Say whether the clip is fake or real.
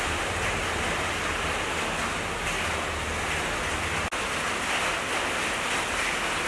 real